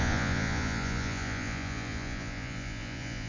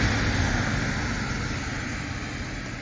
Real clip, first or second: second